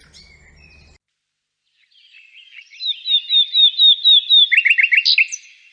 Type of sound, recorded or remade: recorded